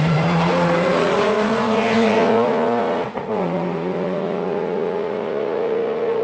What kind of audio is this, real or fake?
fake